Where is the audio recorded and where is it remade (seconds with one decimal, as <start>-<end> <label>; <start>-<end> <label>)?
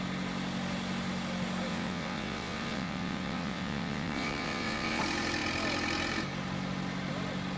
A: 0.0-1.7 recorded; 1.7-5.0 remade; 5.0-7.6 recorded